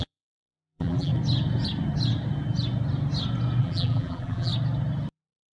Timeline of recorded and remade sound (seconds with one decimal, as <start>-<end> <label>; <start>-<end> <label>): 0.0-1.1 remade; 1.1-3.6 recorded; 3.6-4.5 remade; 4.5-5.1 recorded; 5.1-5.5 remade